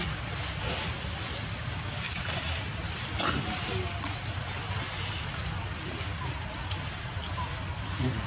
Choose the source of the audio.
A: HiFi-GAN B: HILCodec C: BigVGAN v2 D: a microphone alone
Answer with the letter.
D